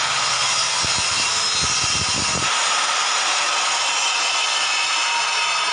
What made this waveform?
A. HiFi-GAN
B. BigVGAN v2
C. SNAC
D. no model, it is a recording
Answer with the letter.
D